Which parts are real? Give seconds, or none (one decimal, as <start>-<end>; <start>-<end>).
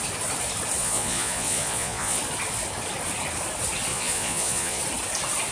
0.0-0.8; 2.2-3.9; 4.8-5.5